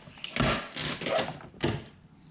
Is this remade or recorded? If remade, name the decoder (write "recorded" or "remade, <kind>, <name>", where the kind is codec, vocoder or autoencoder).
recorded